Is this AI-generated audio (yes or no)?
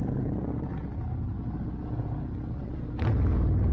no